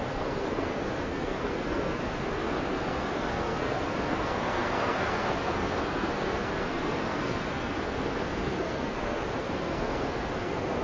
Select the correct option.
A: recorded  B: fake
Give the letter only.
B